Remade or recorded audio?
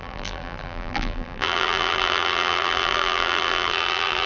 remade